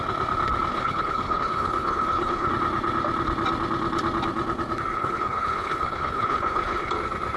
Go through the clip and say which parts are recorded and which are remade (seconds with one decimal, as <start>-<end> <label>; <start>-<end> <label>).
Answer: 0.0-0.7 recorded; 0.7-2.5 remade; 2.5-4.9 recorded; 4.9-6.9 remade; 6.9-7.4 recorded